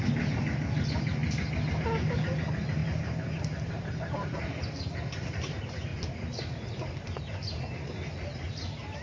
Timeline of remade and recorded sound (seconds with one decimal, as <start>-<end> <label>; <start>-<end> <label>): 0.0-9.0 recorded